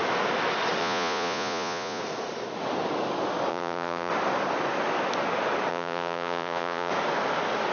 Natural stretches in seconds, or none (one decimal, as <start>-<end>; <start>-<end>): 0.0-0.8; 2.0-3.5; 4.1-5.7; 6.9-7.7